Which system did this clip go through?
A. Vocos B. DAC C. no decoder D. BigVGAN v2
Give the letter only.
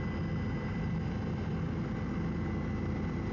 C